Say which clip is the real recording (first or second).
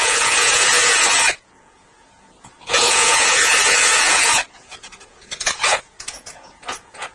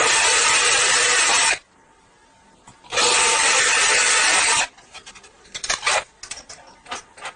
second